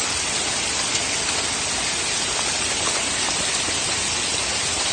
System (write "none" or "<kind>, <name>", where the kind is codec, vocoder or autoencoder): none